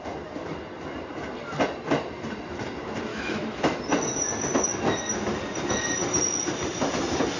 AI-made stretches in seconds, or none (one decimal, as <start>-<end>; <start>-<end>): 3.1-3.8